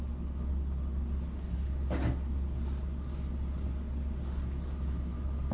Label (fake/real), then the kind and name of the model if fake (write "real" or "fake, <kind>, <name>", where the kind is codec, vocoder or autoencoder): real